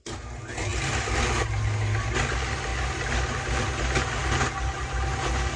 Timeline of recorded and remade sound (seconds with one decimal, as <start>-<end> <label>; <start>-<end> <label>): 0.0-5.6 recorded